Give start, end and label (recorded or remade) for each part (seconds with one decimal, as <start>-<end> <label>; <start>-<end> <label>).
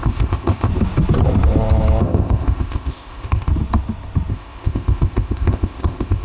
0.0-0.7 remade; 0.7-2.0 recorded; 2.0-3.5 remade; 3.5-4.3 recorded; 4.3-6.2 remade